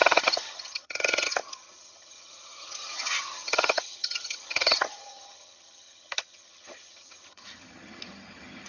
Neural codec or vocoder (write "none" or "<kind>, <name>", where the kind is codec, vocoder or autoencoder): vocoder, HiFi-GAN